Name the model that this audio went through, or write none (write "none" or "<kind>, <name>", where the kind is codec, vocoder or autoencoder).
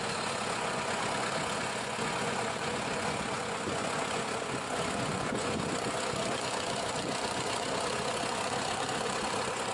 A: vocoder, Vocos